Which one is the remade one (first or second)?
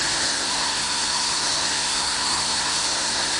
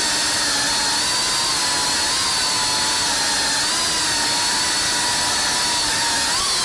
first